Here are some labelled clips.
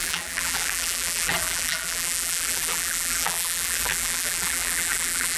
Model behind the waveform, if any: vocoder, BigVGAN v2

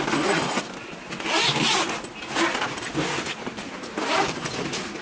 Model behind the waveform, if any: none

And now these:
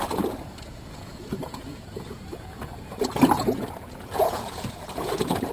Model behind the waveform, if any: vocoder, Vocos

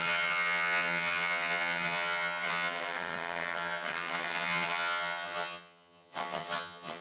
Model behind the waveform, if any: vocoder, HiFi-GAN